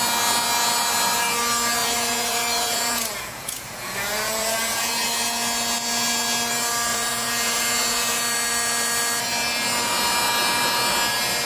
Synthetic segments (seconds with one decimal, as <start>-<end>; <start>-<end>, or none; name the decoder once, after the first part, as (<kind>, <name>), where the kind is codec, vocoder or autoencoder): 1.8-4.9 (vocoder, Vocos); 6.9-8.2